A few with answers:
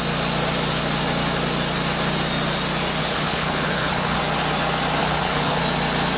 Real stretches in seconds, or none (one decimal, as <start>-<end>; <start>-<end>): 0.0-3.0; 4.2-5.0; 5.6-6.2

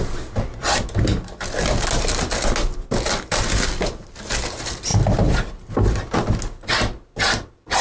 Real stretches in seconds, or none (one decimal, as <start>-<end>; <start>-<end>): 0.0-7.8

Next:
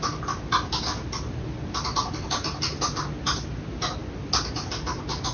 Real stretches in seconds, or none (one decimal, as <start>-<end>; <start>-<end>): 0.0-5.3

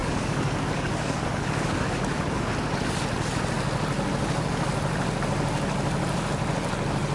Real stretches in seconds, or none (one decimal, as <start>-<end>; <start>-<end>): 2.5-7.1

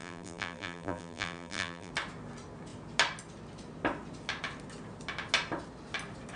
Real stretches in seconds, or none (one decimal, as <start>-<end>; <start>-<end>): 1.9-6.4